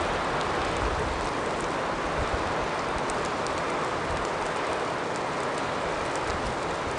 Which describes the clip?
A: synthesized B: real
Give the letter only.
B